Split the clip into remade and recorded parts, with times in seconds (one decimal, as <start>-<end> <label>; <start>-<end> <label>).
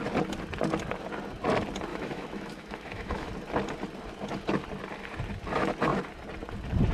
0.0-1.9 recorded; 1.9-3.3 remade; 3.3-6.9 recorded